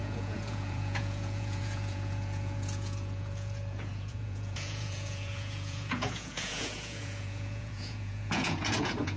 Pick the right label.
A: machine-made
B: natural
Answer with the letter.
A